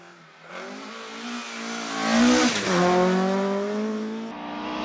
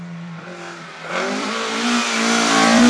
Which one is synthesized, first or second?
second